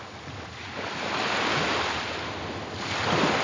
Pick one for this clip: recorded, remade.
recorded